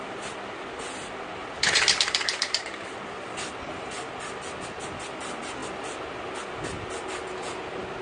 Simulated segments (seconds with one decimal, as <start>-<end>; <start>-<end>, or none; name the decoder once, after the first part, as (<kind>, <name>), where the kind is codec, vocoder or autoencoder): 1.4-2.6 (vocoder, BigVGAN v2)